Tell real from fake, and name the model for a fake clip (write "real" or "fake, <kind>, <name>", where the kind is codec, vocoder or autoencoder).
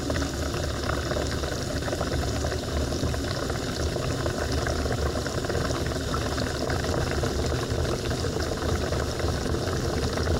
real